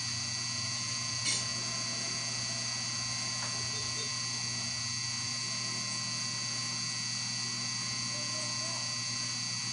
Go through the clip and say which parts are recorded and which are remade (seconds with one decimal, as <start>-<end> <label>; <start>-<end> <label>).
0.0-9.7 recorded

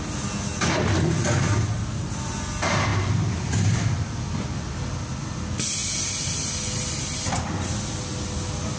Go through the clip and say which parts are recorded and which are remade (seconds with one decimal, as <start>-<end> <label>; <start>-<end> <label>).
0.0-8.8 recorded

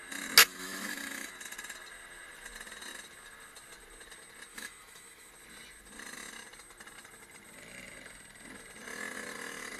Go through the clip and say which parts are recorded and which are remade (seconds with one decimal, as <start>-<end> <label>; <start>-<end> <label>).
0.0-0.4 recorded; 0.4-1.3 remade; 1.3-4.5 recorded; 4.5-5.3 remade; 5.3-9.8 recorded

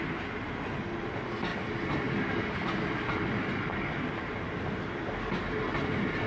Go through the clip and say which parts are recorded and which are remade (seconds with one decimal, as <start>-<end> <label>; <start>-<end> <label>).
0.0-6.3 recorded

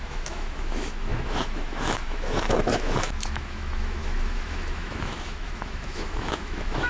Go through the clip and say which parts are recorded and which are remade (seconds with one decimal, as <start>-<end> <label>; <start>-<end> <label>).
0.0-6.9 remade